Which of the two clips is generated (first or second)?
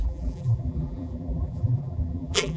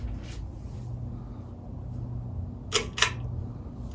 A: first